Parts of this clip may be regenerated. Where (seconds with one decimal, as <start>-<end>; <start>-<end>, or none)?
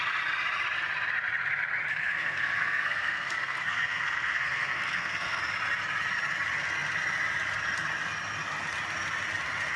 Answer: 1.9-5.4